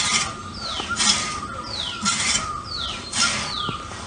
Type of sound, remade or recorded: remade